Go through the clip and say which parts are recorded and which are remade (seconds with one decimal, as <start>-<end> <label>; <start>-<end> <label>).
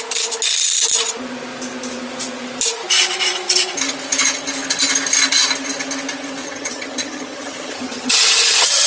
0.0-6.4 recorded; 6.4-8.9 remade